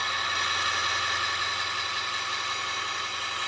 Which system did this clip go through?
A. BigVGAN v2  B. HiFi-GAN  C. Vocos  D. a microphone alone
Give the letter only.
D